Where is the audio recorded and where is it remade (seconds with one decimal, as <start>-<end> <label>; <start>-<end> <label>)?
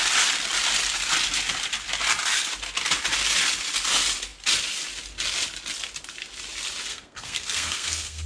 0.0-6.9 recorded; 6.9-8.3 remade